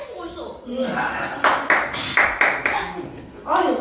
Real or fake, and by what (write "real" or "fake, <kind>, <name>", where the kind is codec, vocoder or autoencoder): real